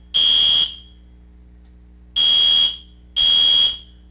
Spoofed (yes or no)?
no